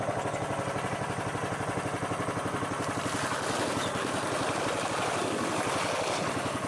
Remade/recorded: recorded